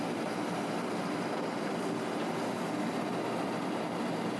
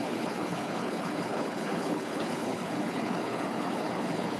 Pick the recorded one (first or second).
first